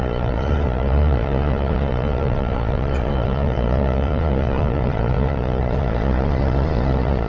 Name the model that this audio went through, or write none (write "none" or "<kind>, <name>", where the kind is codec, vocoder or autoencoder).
vocoder, Vocos